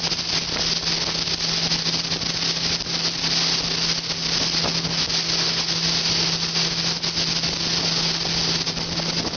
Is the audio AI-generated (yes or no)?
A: no